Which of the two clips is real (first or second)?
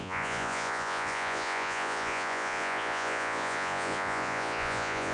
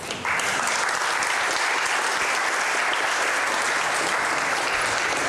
second